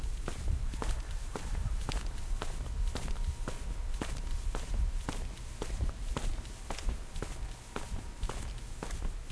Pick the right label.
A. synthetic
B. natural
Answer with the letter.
B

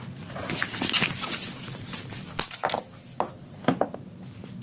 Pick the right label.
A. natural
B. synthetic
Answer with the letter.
A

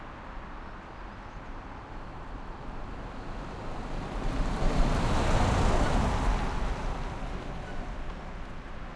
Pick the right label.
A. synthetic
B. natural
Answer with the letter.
B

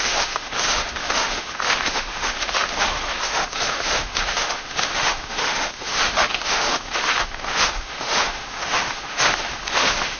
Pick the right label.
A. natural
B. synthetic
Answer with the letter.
B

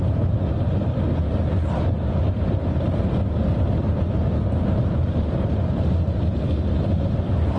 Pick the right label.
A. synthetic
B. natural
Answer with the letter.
B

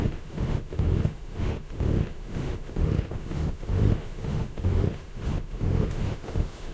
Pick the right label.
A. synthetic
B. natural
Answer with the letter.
A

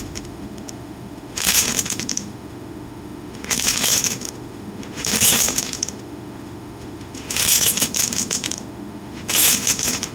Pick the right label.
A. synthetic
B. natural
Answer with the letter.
A